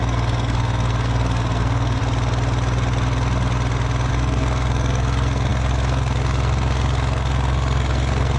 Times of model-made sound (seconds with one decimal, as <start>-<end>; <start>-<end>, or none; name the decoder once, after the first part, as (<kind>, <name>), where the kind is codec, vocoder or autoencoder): 0.0-2.0 (codec, SNAC); 4.1-8.4